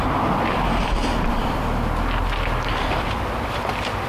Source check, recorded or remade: recorded